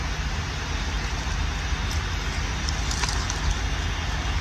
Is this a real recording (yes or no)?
yes